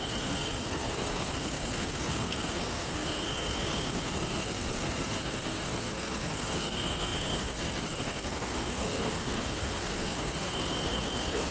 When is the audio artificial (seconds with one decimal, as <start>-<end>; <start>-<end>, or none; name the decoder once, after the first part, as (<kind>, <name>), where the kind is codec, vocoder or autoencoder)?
0.0-11.5 (codec, SNAC)